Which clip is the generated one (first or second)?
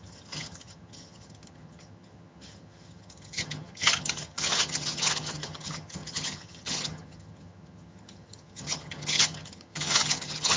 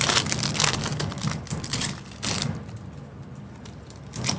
first